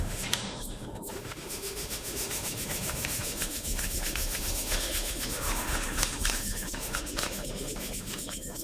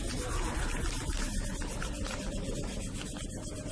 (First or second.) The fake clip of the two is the first